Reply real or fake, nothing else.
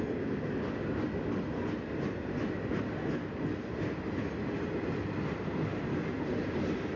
real